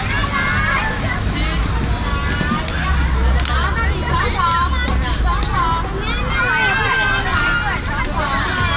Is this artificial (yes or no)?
no